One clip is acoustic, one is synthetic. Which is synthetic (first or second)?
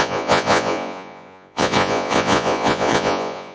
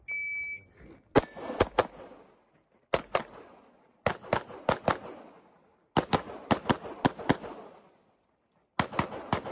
first